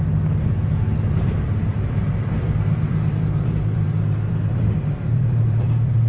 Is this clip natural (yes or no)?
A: no